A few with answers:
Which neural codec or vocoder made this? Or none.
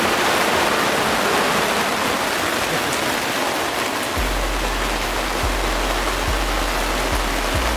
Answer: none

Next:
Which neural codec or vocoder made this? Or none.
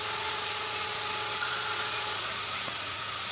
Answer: vocoder, Vocos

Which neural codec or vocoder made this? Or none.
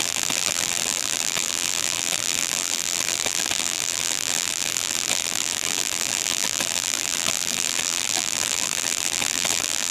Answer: vocoder, BigVGAN v2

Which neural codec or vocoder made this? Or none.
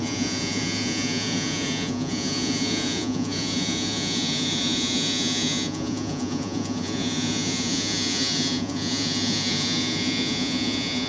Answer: vocoder, Vocos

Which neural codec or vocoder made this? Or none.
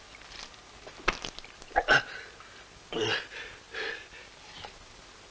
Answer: none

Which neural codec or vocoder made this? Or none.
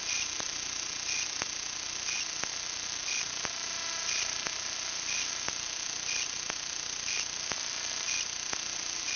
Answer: none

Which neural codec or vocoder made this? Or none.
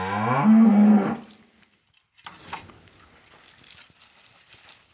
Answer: none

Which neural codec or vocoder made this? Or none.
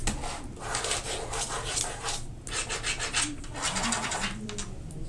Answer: none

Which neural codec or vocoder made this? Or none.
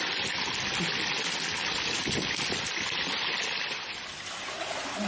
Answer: none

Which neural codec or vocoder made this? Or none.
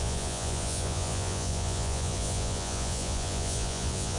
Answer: vocoder, Vocos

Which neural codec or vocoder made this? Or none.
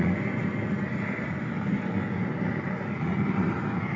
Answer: none